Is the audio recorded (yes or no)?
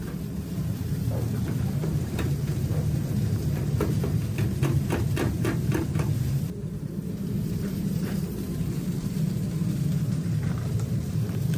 no